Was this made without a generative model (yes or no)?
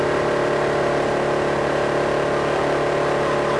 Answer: yes